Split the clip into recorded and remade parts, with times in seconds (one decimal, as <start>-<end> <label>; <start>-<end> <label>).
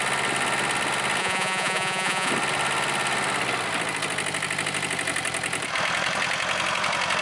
0.0-1.2 recorded; 1.2-2.3 remade; 2.3-7.2 recorded